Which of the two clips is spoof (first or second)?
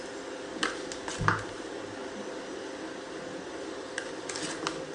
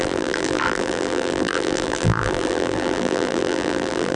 second